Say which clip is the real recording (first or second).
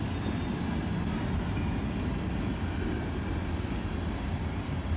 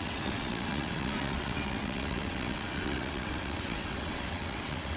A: first